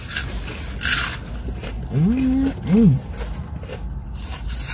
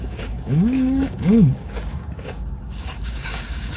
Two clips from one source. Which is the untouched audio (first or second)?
first